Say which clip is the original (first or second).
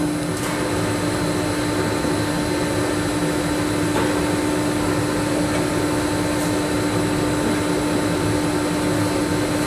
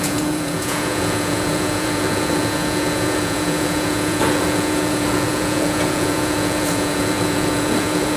first